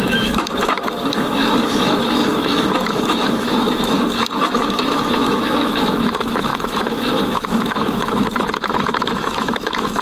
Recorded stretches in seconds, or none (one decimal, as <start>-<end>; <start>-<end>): none